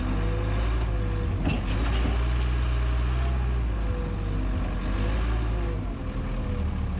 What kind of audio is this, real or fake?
real